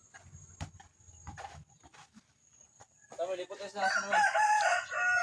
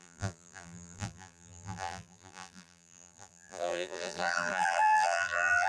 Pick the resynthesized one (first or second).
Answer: second